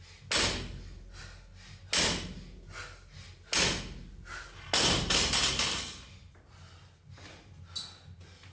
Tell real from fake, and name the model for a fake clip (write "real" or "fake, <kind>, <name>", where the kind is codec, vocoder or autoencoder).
real